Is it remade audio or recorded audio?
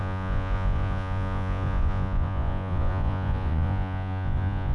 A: remade